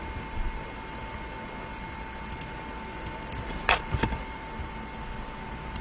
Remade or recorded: recorded